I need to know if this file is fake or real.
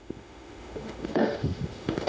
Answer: fake